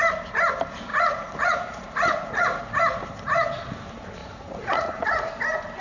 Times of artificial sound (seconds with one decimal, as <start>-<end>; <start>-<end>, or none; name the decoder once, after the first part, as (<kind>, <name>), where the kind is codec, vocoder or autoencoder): 0.9-2.6 (vocoder, Vocos); 4.2-5.3

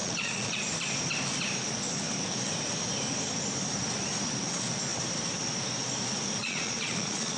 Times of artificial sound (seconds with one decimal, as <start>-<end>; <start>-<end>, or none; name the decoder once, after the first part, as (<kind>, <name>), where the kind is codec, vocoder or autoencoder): 0.0-0.6 (vocoder, Vocos); 6.4-7.4

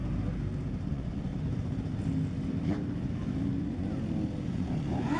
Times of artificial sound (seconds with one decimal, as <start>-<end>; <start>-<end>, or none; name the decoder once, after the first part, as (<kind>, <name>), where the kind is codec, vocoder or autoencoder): 0.9-1.3 (vocoder, Vocos); 4.4-5.2

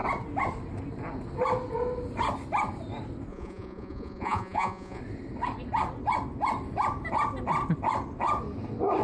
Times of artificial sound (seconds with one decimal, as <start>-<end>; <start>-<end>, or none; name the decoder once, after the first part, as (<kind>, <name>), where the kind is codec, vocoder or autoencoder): 3.3-5.0 (vocoder, Vocos)

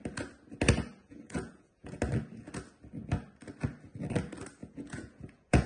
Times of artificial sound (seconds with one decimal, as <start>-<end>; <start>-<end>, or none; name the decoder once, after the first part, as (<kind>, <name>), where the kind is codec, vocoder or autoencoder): 1.0-2.0 (vocoder, Vocos); 4.6-5.7

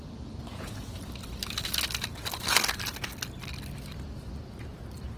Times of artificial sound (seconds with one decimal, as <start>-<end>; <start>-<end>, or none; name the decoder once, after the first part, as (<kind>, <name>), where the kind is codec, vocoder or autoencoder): 0.5-1.0 (vocoder, Vocos)